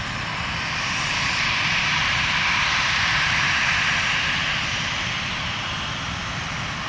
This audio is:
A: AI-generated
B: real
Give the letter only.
A